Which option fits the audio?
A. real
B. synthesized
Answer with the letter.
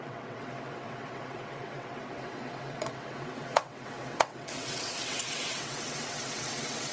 B